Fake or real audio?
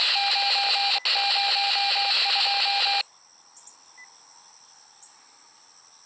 real